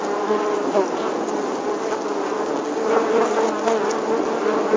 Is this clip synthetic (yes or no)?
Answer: no